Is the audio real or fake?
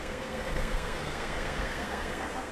fake